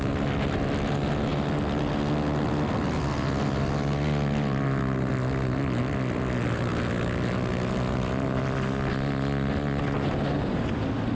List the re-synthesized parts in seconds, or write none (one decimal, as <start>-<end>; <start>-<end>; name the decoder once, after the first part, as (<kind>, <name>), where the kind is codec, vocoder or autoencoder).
none